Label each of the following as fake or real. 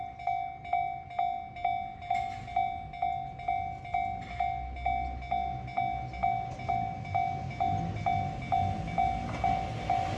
real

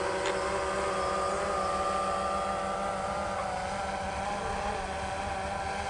real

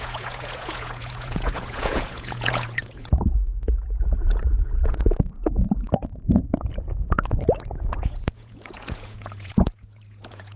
fake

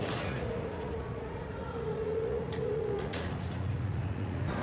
fake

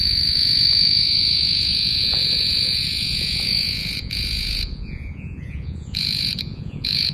fake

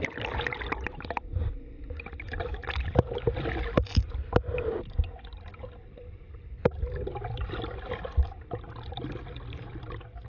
real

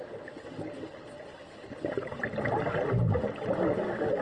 real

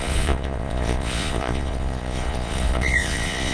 fake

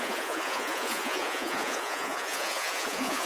fake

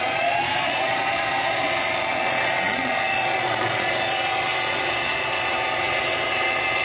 fake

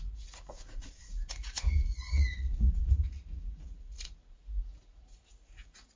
fake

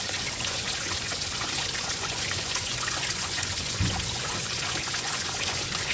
fake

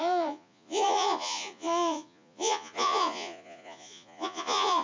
fake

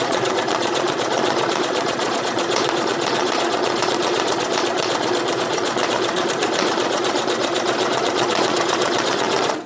fake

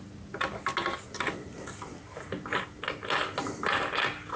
real